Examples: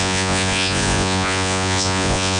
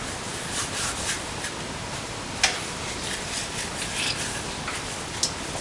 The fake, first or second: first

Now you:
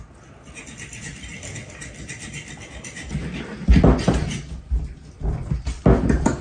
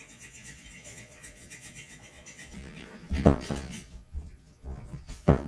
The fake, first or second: second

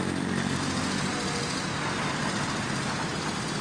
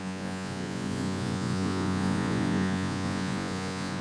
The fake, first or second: second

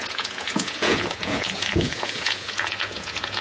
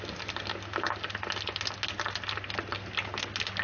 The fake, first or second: first